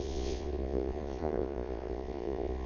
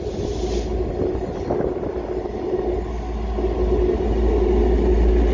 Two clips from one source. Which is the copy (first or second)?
first